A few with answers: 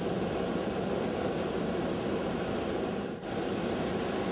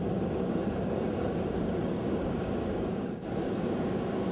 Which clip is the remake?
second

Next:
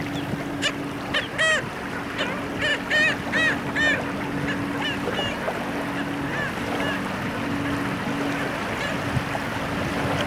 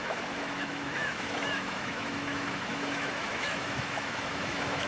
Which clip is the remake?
second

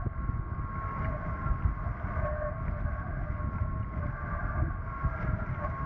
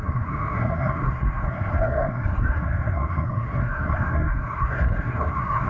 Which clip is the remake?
second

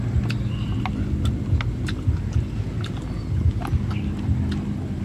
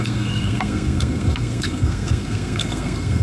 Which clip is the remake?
second